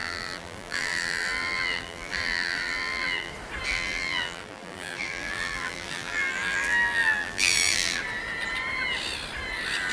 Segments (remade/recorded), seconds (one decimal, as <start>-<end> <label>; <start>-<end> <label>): 0.0-3.3 remade; 3.3-3.7 recorded; 3.7-8.0 remade; 8.0-9.9 recorded

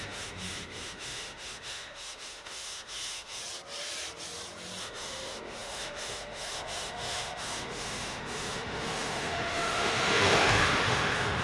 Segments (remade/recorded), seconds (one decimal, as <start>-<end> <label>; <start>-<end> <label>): 0.0-3.4 remade; 3.4-4.8 recorded; 4.8-11.4 remade

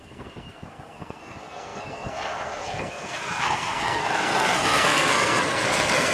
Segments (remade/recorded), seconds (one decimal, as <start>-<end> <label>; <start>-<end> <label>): 0.0-6.1 remade

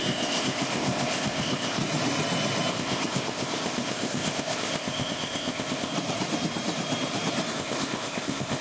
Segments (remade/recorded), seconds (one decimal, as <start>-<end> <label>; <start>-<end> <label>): 0.0-1.8 remade; 1.8-2.7 recorded; 2.7-5.9 remade; 5.9-7.5 recorded; 7.5-8.6 remade